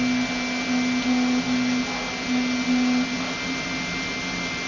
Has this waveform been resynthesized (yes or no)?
no